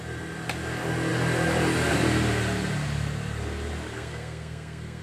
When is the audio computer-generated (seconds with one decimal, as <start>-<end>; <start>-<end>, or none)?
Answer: 3.9-5.0